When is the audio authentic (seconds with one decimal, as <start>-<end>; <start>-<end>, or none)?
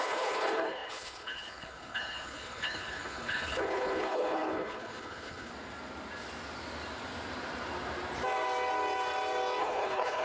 5.5-9.6